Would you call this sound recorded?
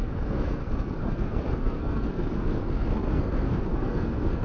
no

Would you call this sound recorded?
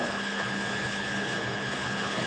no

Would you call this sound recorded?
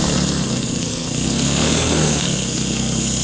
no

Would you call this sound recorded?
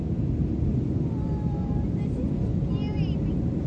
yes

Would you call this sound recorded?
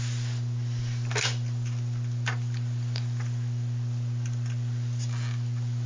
yes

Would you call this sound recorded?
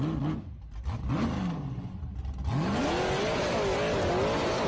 yes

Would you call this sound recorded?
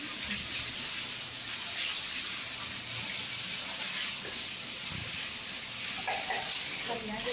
yes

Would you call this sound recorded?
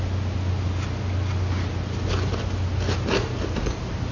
yes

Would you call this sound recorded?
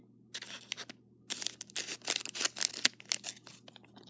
yes